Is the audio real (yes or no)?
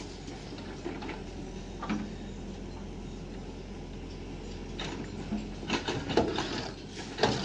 yes